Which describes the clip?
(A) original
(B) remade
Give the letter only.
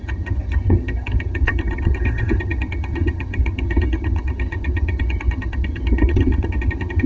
B